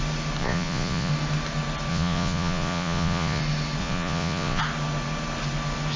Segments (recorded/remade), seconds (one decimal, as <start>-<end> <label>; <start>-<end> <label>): 0.0-0.4 recorded; 0.4-1.1 remade; 1.1-1.9 recorded; 1.9-3.4 remade; 3.4-3.8 recorded; 3.8-4.6 remade; 4.6-6.0 recorded